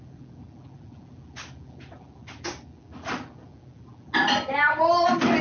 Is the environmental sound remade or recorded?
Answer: recorded